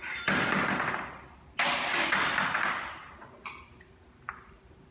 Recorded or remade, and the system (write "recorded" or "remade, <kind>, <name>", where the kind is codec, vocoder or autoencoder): recorded